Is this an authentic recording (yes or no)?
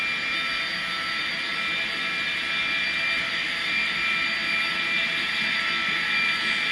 yes